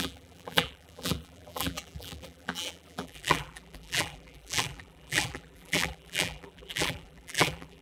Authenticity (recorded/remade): remade